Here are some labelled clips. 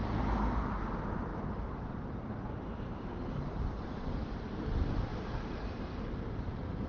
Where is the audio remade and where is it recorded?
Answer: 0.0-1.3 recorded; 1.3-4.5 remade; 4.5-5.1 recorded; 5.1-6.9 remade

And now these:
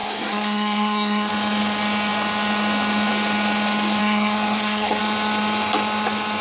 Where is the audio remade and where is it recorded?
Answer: 0.0-1.3 remade; 1.3-4.0 recorded; 4.0-5.0 remade; 5.0-6.4 recorded

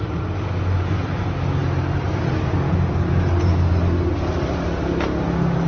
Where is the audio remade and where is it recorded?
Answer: 0.0-5.7 recorded

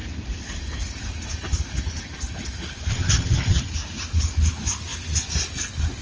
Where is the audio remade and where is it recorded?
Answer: 0.0-2.9 recorded; 2.9-3.6 remade; 3.6-6.0 recorded

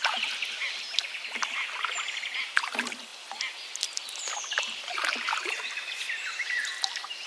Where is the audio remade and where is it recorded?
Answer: 0.0-7.3 recorded

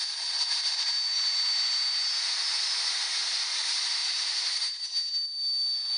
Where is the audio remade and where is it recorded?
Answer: 0.0-6.0 recorded